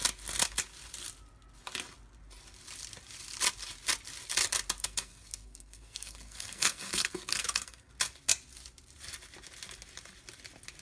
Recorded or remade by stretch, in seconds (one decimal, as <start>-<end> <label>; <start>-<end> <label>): 0.0-4.8 recorded; 4.8-7.9 remade; 7.9-10.8 recorded